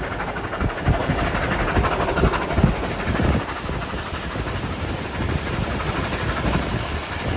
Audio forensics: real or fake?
real